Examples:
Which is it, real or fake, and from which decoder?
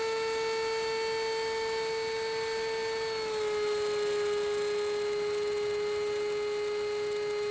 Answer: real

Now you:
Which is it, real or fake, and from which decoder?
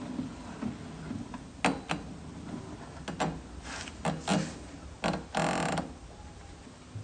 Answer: real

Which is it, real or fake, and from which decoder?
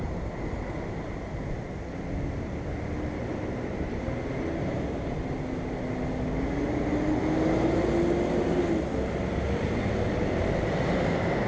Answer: real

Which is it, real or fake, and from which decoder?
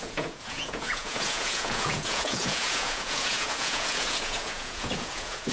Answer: fake, vocoder, Vocos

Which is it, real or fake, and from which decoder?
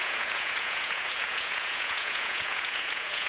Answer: fake, vocoder, Vocos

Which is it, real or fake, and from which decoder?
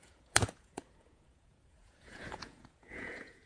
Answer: fake, vocoder, Vocos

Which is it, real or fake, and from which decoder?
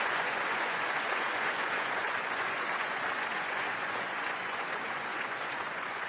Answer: fake, vocoder, Vocos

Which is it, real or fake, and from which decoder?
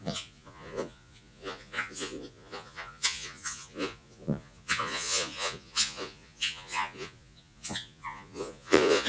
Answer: fake, vocoder, Vocos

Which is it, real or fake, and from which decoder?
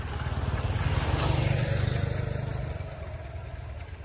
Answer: real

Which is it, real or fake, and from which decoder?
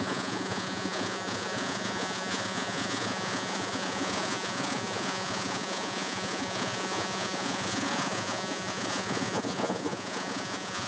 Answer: fake, vocoder, Vocos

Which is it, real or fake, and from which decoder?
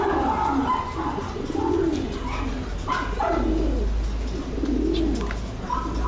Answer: real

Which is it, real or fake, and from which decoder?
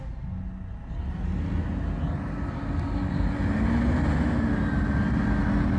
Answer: real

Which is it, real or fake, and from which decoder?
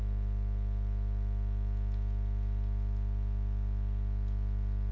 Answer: real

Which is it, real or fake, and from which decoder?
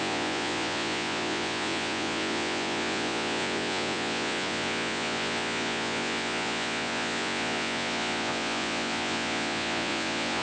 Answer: fake, vocoder, Vocos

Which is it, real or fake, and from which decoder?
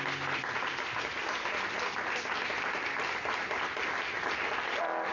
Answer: real